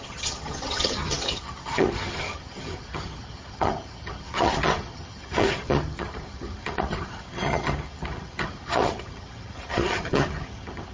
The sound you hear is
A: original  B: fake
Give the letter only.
B